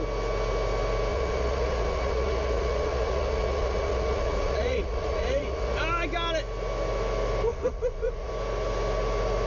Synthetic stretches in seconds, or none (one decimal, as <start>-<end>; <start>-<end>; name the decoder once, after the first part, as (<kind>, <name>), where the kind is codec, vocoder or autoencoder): 1.1-5.8 (vocoder, Vocos); 7.5-8.3